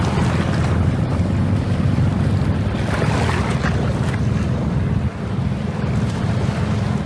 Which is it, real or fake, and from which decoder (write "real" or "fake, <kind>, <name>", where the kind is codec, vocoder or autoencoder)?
real